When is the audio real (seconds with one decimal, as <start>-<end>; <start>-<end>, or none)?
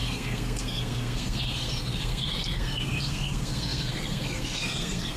none